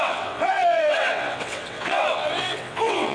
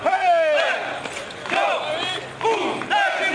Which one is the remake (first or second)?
first